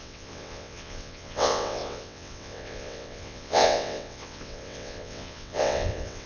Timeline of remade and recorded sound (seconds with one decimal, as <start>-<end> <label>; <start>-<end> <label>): 0.0-6.3 remade